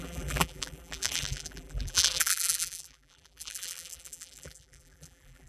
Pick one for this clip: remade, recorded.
remade